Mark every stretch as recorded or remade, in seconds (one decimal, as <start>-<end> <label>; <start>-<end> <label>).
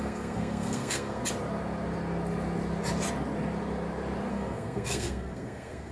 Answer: 0.0-1.2 remade; 1.2-4.3 recorded; 4.3-5.9 remade